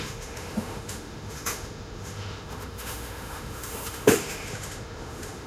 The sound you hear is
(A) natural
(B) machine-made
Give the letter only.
B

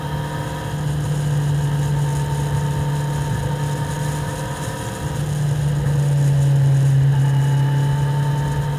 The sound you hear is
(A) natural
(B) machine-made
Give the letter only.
B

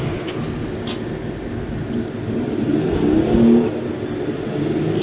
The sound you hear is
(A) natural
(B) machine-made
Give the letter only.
A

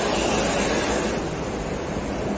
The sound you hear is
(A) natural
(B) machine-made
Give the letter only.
A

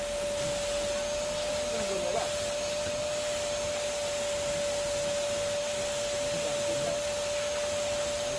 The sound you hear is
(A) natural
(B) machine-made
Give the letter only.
A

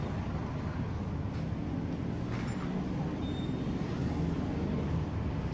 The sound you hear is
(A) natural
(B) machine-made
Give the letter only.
A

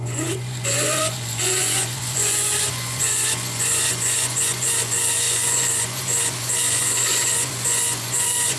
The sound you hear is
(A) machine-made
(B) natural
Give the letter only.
A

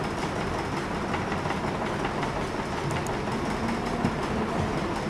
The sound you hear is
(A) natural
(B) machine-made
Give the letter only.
A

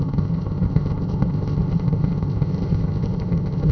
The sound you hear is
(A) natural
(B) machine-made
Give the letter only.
B